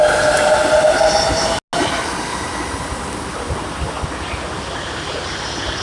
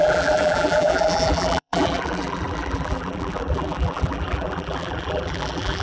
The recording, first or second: first